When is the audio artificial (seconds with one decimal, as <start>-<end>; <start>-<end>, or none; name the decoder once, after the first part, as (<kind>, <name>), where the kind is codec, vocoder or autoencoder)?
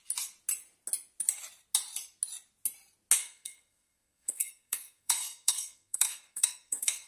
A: 3.2-7.1 (codec, SNAC)